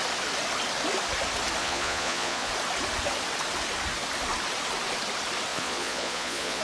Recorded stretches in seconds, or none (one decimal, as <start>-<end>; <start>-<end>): 0.0-1.6; 2.5-5.5